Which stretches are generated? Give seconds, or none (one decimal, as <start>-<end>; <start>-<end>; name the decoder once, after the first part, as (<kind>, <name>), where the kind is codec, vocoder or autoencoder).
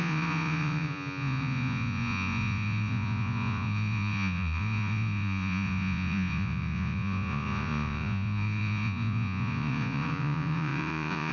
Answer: 0.0-11.3 (vocoder, Vocos)